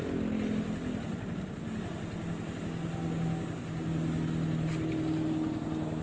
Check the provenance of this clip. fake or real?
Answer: real